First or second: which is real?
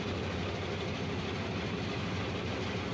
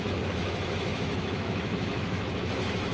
first